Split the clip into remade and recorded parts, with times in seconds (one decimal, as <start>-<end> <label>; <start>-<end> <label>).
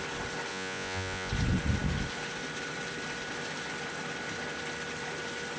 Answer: 0.0-0.5 recorded; 0.5-1.3 remade; 1.3-5.6 recorded